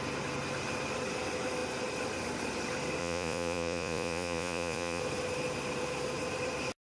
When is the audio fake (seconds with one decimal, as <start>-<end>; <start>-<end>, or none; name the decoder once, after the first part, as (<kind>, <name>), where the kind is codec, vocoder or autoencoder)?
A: 3.0-5.0 (vocoder, Vocos)